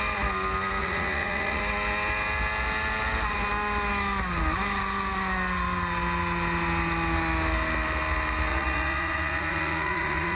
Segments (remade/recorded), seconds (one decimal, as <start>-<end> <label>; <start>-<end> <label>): 0.0-0.8 recorded; 0.8-1.6 remade; 1.6-8.5 recorded; 8.5-10.4 remade